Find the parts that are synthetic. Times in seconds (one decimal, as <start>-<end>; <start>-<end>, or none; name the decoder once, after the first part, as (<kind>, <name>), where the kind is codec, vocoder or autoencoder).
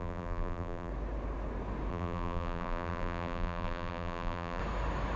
0.0-0.9 (vocoder, BigVGAN v2); 1.9-4.6